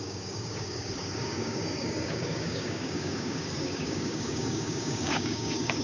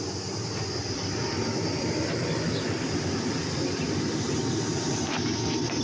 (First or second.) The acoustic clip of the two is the second